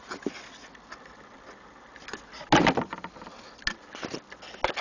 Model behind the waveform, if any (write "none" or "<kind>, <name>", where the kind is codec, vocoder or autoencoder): none